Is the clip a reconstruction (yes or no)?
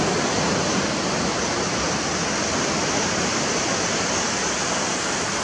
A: no